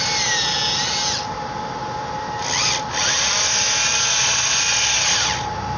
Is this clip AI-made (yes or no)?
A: no